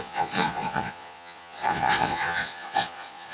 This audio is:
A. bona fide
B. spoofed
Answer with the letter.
B